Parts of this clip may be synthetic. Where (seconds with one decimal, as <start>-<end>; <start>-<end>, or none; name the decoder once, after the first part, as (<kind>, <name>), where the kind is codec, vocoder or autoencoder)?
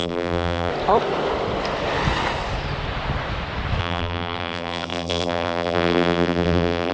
0.0-0.7 (vocoder, BigVGAN v2); 3.8-6.9